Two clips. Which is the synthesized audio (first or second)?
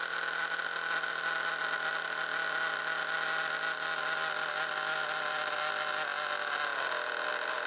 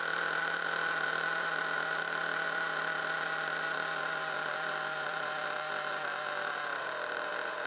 second